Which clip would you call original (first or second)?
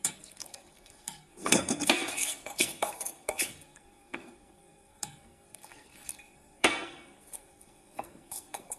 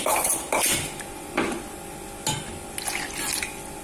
second